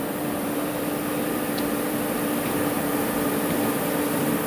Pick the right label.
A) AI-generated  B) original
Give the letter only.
A